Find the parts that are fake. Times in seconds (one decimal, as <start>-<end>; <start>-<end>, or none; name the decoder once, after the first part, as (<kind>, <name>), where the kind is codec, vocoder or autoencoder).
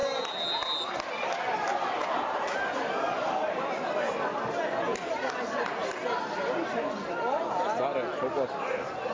none